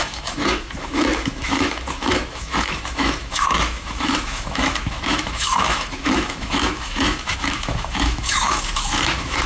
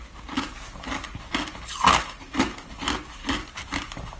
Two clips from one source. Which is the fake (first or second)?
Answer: first